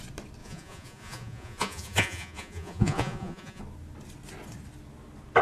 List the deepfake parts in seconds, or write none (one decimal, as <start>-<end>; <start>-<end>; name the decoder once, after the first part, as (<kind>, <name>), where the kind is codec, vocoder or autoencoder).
0.4-3.6 (vocoder, Vocos)